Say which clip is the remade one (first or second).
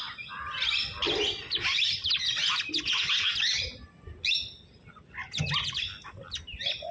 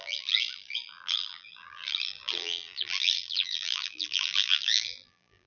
second